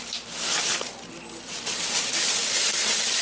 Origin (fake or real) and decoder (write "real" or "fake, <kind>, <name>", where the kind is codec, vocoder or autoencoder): real